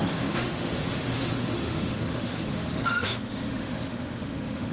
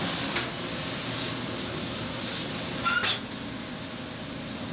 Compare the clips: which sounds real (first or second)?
second